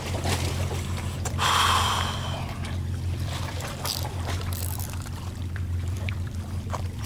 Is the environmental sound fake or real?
fake